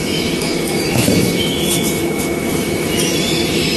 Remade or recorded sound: remade